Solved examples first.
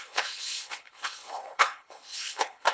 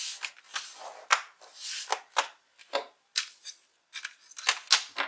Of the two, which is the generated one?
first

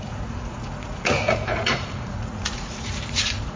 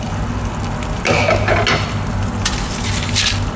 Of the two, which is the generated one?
first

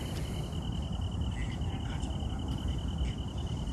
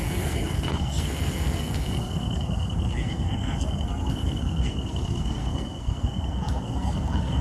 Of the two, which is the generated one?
second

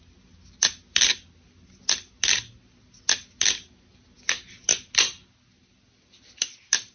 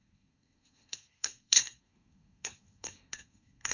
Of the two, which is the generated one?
second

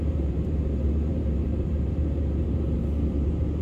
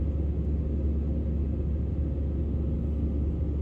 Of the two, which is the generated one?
first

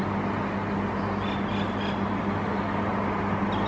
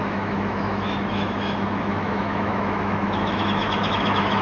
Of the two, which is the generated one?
second